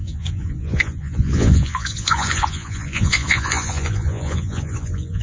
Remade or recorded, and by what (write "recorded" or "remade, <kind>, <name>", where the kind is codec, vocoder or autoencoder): remade, vocoder, Vocos